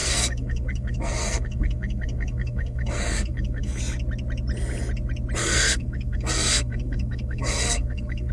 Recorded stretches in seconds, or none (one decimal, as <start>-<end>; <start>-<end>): 3.8-5.4